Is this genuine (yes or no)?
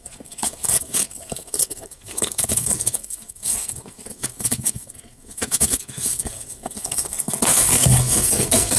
no